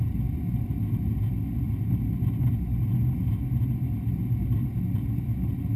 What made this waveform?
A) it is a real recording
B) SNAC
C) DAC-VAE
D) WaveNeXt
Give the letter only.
A